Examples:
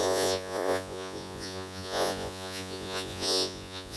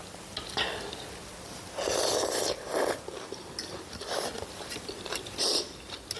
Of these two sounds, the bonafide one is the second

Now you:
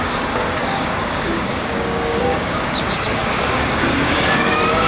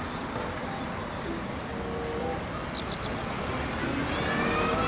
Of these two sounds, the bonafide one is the second